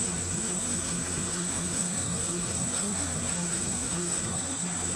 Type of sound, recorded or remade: remade